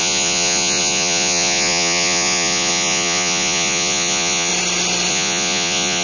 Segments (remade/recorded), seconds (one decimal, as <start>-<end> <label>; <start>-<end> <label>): 0.0-4.5 remade; 4.5-5.1 recorded; 5.1-6.0 remade